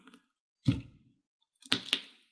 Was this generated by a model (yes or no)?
no